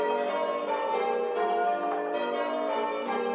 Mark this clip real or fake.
real